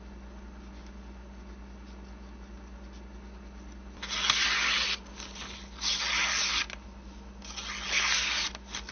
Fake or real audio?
real